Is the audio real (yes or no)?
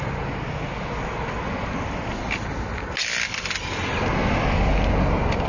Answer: yes